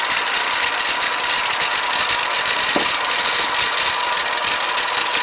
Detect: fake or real real